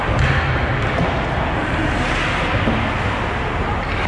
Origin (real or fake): real